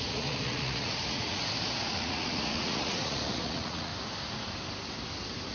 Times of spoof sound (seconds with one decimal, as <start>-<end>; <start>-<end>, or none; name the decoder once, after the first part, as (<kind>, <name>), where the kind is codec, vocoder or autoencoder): 0.0-1.4 (vocoder, Vocos); 1.9-3.9